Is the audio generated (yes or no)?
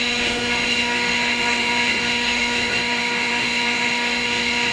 yes